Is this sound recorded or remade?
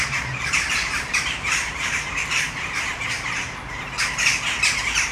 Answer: remade